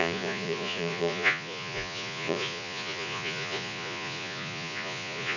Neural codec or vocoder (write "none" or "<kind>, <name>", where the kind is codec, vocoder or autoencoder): vocoder, Vocos